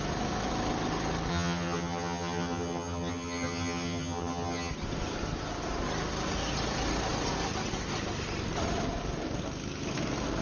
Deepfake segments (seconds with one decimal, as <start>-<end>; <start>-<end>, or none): 1.3-4.7